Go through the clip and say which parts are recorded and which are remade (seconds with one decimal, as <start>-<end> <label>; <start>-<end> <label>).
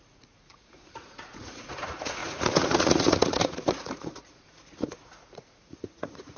0.0-6.4 remade